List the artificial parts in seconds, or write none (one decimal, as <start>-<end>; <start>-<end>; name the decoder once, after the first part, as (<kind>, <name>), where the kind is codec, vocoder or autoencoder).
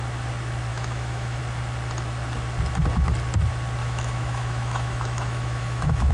0.7-1.4 (autoencoder, DAC-VAE); 3.8-6.1